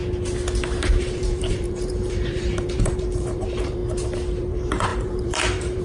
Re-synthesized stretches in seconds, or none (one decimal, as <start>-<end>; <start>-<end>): 1.0-3.8; 4.4-5.8